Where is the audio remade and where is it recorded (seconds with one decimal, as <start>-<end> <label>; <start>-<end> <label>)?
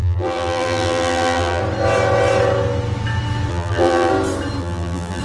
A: 0.0-1.6 remade; 1.6-3.5 recorded; 3.5-4.1 remade; 4.1-4.6 recorded; 4.6-5.2 remade